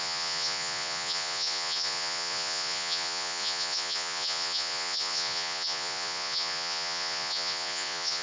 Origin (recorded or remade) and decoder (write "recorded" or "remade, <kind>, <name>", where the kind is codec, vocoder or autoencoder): remade, vocoder, Vocos